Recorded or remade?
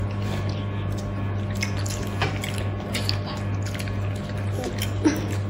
recorded